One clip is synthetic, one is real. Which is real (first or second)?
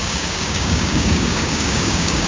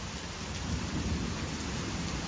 second